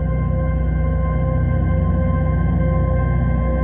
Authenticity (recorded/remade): recorded